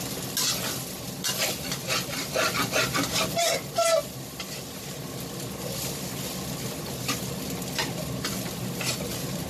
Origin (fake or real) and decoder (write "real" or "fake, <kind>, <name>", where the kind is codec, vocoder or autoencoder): real